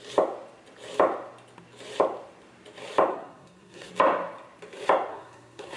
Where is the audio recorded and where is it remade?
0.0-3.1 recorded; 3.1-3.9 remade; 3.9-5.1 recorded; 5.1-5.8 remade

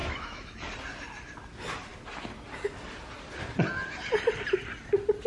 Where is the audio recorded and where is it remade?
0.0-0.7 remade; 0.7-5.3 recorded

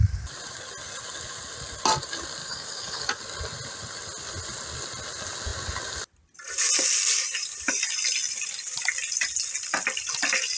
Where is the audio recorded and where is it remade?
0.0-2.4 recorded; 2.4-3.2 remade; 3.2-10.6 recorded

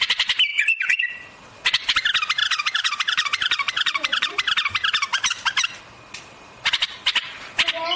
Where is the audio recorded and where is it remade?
0.0-0.5 recorded; 0.5-1.1 remade; 1.1-2.4 recorded; 2.4-4.3 remade; 4.3-8.0 recorded

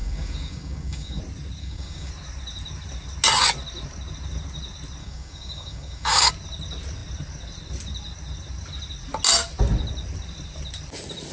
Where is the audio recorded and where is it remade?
0.0-1.2 remade; 1.2-1.6 recorded; 1.6-2.1 remade; 2.1-5.0 recorded; 5.0-6.3 remade; 6.3-11.3 recorded